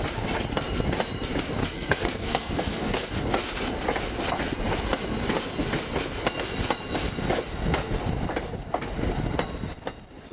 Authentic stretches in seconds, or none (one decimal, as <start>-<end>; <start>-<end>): 0.0-1.6; 3.1-10.3